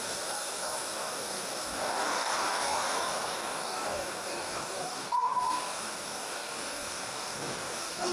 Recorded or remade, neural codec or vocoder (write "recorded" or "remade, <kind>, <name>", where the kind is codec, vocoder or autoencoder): remade, codec, DAC